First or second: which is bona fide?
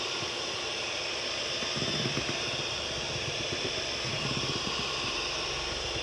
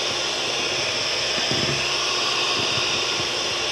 second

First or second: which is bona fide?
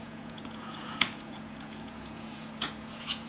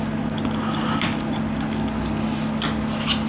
second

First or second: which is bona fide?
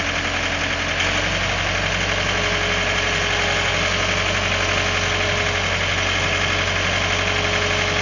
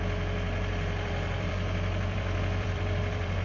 first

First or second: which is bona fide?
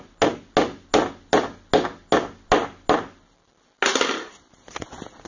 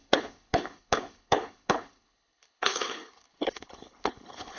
first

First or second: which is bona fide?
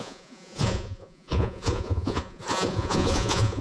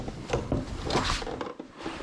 second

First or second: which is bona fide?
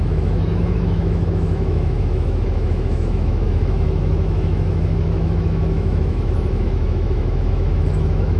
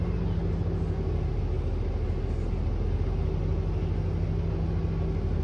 second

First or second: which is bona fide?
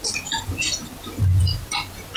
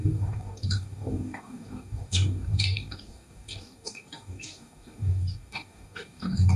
first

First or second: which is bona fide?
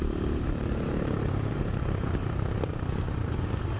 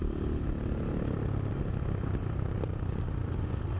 second